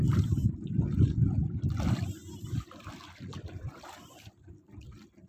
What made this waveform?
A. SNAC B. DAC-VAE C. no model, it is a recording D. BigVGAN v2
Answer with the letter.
D